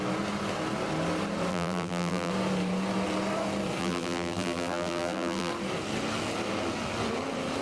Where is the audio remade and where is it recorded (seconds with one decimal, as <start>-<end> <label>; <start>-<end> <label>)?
0.0-1.5 recorded; 1.5-2.3 remade; 2.3-3.8 recorded; 3.8-5.5 remade; 5.5-7.6 recorded